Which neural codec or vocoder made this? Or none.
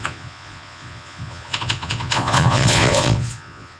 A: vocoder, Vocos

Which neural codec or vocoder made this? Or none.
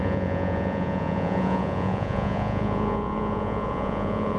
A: vocoder, Vocos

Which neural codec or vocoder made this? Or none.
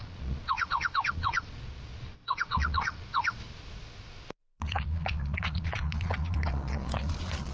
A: vocoder, Vocos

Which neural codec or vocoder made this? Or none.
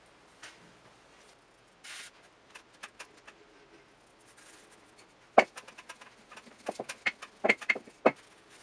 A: none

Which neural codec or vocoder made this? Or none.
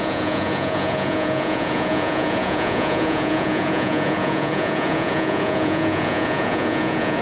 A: vocoder, Vocos